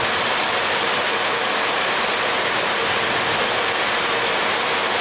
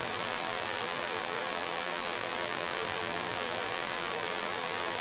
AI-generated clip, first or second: second